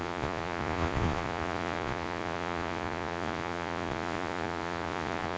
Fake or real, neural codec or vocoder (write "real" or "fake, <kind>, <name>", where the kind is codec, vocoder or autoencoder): fake, vocoder, Vocos